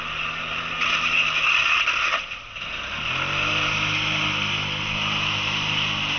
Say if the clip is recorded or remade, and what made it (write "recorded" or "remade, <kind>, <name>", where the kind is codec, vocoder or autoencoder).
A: recorded